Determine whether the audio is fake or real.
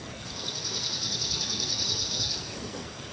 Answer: fake